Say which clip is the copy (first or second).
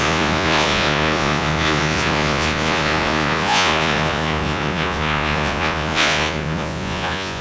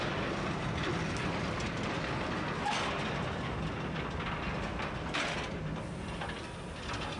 first